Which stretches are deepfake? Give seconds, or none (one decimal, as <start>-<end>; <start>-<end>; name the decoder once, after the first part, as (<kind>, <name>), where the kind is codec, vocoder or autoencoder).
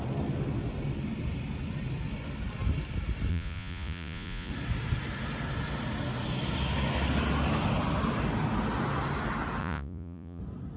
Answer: 3.3-4.5 (vocoder, Vocos); 9.6-10.4